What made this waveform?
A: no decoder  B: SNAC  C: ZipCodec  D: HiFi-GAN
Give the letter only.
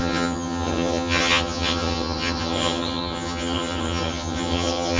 D